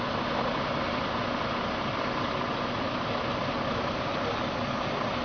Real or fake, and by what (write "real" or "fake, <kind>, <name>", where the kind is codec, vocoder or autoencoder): real